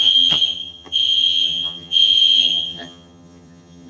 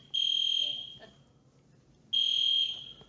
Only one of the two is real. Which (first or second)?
second